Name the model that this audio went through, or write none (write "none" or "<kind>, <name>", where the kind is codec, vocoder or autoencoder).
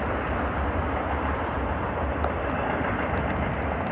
none